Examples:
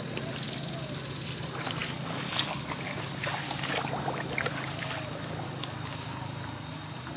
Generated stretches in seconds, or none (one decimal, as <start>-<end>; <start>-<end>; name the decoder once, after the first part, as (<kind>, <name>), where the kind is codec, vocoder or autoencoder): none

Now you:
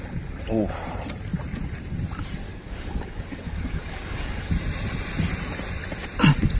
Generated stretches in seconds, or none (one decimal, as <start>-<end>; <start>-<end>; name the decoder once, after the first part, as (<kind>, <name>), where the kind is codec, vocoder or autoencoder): 2.5-4.5 (codec, DAC)

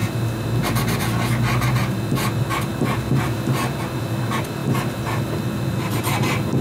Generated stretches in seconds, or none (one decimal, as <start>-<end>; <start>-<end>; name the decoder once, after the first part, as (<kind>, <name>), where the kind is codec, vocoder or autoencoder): none

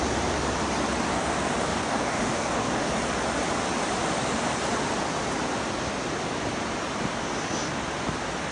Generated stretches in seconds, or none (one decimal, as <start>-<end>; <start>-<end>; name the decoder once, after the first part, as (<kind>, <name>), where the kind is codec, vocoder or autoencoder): 1.6-2.9 (codec, DAC)